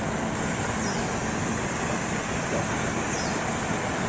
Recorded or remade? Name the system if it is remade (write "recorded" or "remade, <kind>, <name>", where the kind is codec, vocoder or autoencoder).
recorded